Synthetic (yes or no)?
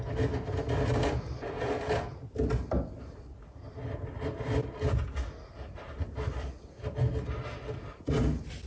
no